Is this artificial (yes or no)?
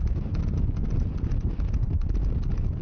no